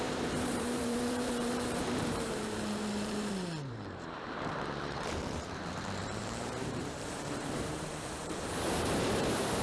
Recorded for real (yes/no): no